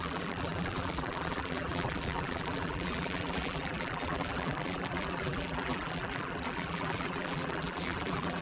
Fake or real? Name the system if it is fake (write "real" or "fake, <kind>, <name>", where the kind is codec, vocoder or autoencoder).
fake, vocoder, BigVGAN v2